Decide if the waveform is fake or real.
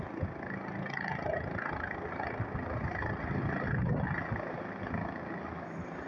real